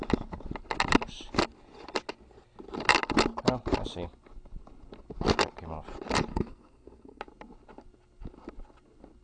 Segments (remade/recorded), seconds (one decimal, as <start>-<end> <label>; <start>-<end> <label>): 0.0-6.3 recorded; 6.3-7.2 remade; 7.2-9.2 recorded